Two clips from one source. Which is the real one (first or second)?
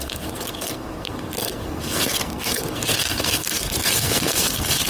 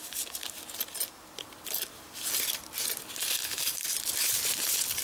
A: second